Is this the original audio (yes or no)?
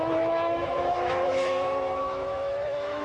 no